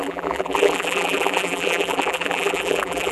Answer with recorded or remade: remade